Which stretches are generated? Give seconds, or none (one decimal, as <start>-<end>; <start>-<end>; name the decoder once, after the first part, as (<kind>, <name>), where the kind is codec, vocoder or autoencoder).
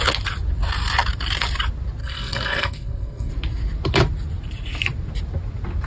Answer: 2.0-3.3 (codec, SNAC)